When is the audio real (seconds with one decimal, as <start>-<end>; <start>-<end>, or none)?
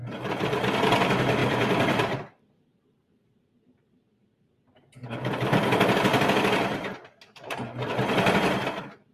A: 0.0-1.4; 2.5-9.1